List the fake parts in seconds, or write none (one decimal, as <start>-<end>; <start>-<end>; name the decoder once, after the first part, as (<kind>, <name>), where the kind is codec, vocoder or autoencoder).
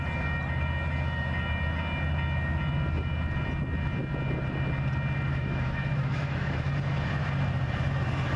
5.3-6.7 (autoencoder, DAC-VAE)